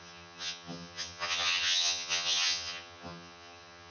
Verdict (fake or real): fake